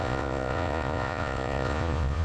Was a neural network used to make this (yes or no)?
yes